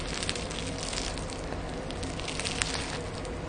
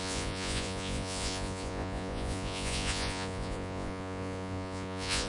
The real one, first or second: first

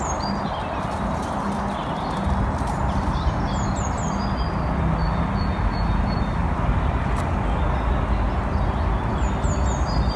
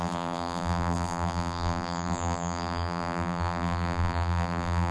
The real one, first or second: first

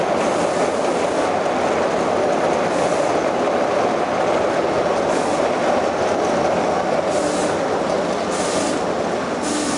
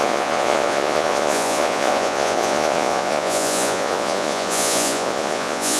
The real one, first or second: first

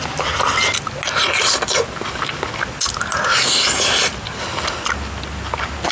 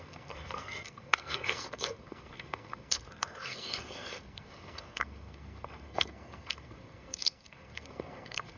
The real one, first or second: first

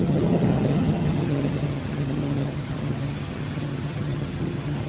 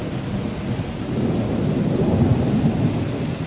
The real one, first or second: second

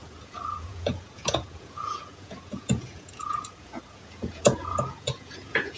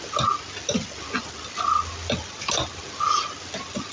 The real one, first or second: second